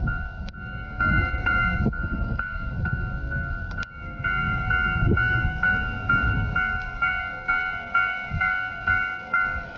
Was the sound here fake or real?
fake